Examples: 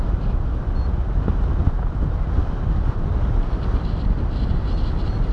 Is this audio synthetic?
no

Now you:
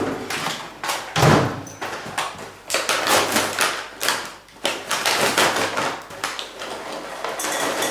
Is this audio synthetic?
no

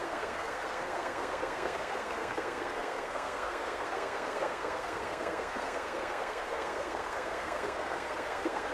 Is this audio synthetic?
yes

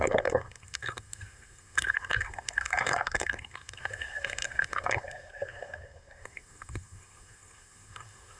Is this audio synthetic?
yes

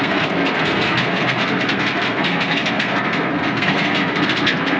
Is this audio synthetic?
yes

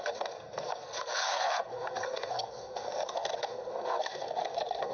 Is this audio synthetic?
yes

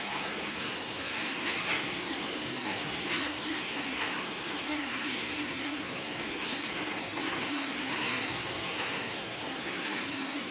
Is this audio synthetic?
yes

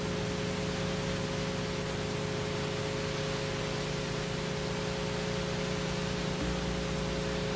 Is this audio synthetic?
no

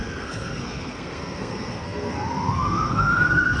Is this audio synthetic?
yes